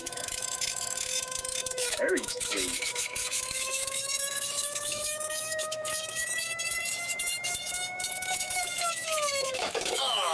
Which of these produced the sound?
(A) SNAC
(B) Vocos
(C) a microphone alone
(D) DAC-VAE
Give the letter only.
D